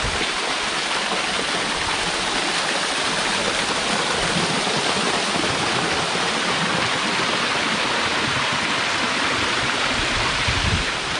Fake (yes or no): no